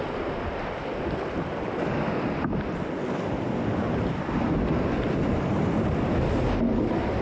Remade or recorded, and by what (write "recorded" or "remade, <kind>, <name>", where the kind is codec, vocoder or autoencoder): recorded